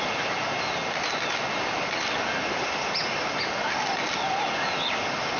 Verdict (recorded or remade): recorded